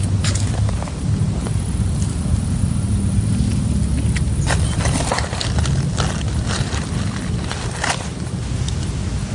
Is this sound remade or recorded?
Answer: recorded